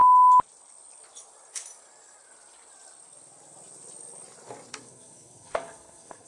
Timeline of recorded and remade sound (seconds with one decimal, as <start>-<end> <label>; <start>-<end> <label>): 0.0-4.7 recorded; 4.7-6.3 remade